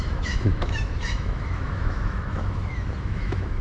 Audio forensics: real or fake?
fake